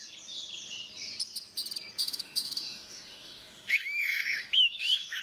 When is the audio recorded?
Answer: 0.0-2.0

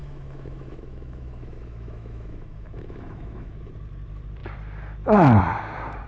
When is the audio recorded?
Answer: 3.7-6.1

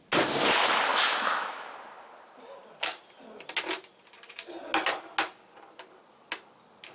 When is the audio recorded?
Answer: 0.0-0.9; 1.7-6.9